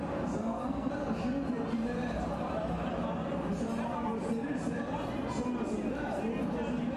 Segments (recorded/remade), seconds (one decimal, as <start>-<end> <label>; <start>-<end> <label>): 0.0-0.4 recorded; 0.4-0.9 remade; 0.9-7.0 recorded